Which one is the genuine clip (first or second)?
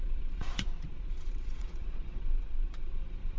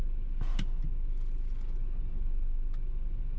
second